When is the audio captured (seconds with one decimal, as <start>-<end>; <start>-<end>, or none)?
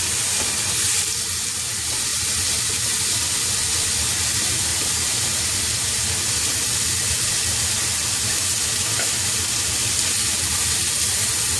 0.0-11.6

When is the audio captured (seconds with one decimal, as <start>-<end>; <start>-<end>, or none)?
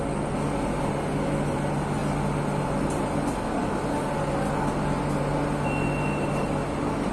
0.0-7.1